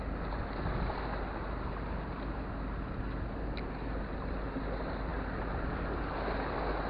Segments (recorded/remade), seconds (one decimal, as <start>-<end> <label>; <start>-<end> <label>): 0.0-6.9 recorded

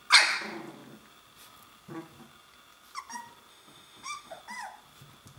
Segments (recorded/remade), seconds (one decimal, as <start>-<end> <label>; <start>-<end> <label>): 0.0-3.5 recorded; 3.5-4.4 remade; 4.4-5.4 recorded

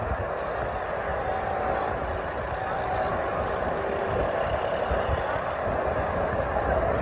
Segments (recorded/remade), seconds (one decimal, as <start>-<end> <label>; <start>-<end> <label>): 0.0-7.0 recorded

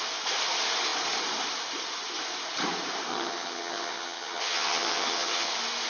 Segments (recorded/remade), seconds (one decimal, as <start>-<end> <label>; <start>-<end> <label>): 0.0-3.1 recorded; 3.1-5.5 remade; 5.5-5.9 recorded

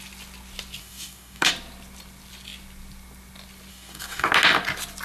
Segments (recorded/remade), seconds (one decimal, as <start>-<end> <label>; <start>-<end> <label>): 0.0-0.8 recorded; 0.8-1.5 remade; 1.5-3.7 recorded; 3.7-4.3 remade; 4.3-5.0 recorded